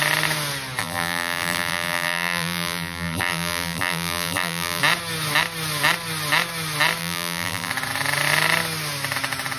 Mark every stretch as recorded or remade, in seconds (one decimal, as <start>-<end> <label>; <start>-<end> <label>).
0.0-0.8 recorded; 0.8-4.8 remade; 4.8-7.0 recorded; 7.0-7.7 remade; 7.7-9.6 recorded